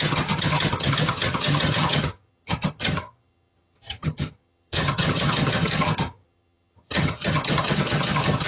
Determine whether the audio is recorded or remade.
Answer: remade